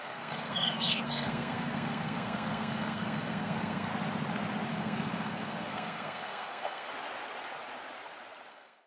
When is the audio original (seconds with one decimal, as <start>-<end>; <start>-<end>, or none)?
3.9-4.7; 6.9-8.5